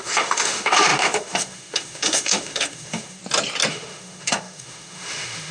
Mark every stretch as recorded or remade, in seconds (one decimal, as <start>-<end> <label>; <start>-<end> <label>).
0.0-3.2 remade; 3.2-3.7 recorded; 3.7-5.5 remade

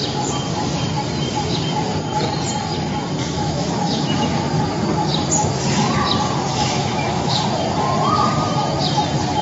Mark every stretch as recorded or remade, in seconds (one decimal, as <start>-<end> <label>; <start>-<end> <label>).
0.0-3.2 recorded; 3.2-4.6 remade; 4.6-6.5 recorded; 6.5-7.4 remade; 7.4-9.4 recorded

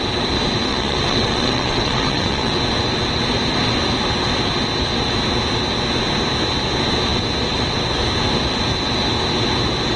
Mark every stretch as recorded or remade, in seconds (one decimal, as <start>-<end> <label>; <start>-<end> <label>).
0.0-0.7 recorded; 0.7-2.5 remade; 2.5-10.0 recorded

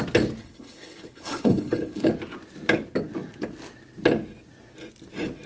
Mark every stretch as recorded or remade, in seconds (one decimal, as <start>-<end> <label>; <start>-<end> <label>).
0.0-0.4 recorded; 0.4-2.1 remade; 2.1-5.5 recorded

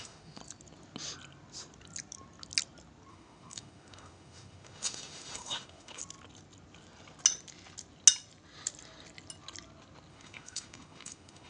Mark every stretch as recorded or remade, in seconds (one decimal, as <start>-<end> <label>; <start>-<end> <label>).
0.0-0.4 remade; 0.4-3.1 recorded; 3.1-6.0 remade; 6.0-10.1 recorded; 10.1-11.5 remade

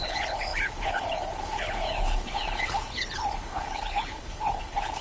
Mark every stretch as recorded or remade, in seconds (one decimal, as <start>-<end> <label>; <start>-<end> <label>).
0.0-5.0 remade

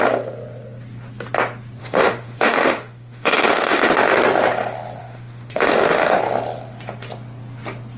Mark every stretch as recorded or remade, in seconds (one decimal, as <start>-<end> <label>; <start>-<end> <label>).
0.0-1.8 recorded; 1.8-3.9 remade; 3.9-5.0 recorded; 5.0-6.2 remade; 6.2-8.0 recorded

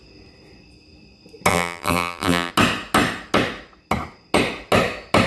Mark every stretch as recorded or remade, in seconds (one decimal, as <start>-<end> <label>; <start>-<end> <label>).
0.0-1.5 recorded; 1.5-2.5 remade; 2.5-5.3 recorded